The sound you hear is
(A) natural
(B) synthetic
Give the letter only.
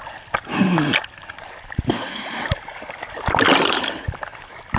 A